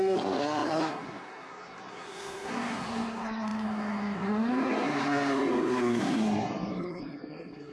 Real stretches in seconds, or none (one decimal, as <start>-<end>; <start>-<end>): none